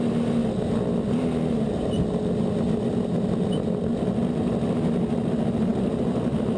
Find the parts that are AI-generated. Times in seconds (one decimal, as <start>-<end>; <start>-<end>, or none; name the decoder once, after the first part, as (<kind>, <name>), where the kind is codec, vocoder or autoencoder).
none